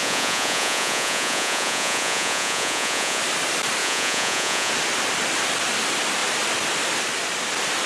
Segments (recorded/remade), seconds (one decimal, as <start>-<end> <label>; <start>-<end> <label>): 0.0-3.2 remade; 3.2-3.8 recorded; 3.8-4.7 remade; 4.7-7.9 recorded